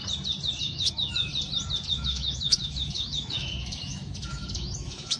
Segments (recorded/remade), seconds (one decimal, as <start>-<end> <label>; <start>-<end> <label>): 0.0-0.6 recorded; 0.6-1.3 remade; 1.3-1.9 recorded; 1.9-5.2 remade